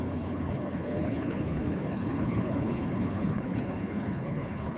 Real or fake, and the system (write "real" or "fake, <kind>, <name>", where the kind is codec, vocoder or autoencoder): fake, codec, HILCodec